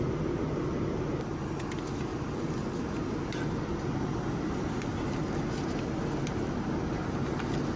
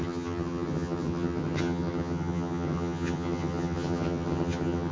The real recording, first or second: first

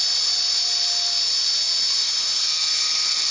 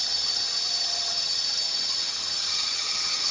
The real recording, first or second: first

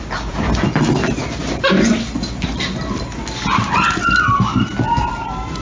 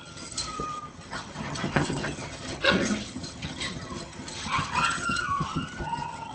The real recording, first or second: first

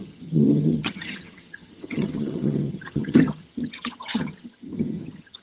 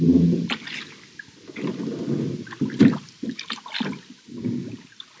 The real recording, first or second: second